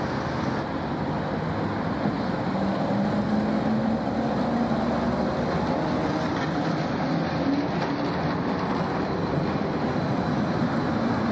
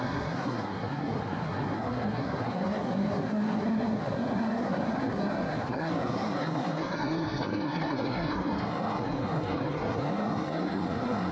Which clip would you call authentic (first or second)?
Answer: first